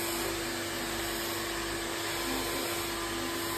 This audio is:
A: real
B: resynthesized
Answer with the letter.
A